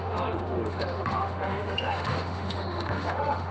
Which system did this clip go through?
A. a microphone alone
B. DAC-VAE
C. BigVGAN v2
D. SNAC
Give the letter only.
B